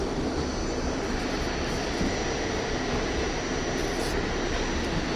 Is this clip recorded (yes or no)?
yes